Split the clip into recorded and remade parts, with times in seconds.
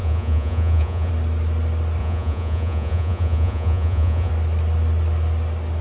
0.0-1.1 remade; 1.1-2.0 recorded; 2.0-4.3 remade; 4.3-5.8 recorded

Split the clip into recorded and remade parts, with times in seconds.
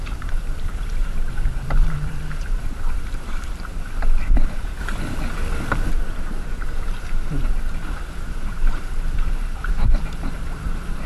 0.0-4.8 remade; 4.8-5.9 recorded; 5.9-11.1 remade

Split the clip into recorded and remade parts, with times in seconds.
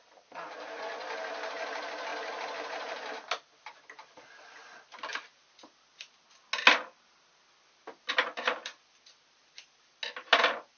0.0-10.8 recorded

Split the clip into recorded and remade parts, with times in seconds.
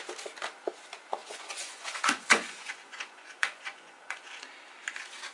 0.0-1.2 recorded; 1.2-4.4 remade; 4.4-5.3 recorded